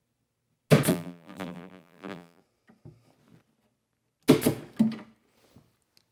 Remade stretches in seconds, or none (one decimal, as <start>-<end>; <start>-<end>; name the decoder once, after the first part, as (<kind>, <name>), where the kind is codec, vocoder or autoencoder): 0.9-2.4 (vocoder, BigVGAN v2)